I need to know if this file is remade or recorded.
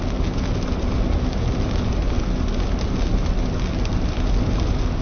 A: recorded